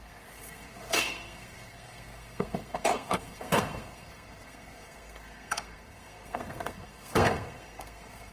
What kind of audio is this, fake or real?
fake